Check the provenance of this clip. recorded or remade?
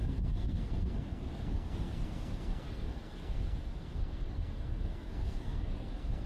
remade